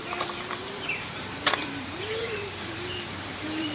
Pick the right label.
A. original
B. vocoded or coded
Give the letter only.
B